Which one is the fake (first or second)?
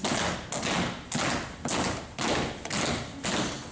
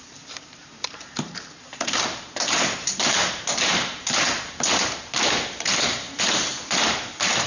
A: second